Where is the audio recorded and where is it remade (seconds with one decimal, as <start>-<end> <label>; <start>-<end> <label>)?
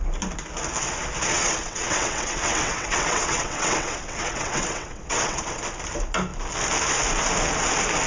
0.0-1.3 recorded; 1.3-5.6 remade; 5.6-8.1 recorded